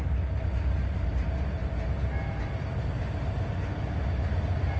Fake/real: real